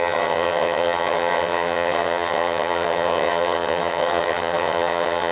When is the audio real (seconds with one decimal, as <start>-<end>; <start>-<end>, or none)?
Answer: none